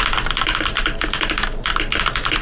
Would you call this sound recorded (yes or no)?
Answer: yes